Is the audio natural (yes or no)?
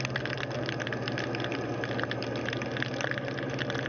yes